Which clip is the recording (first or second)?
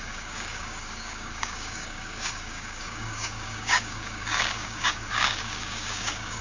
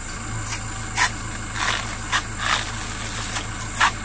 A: second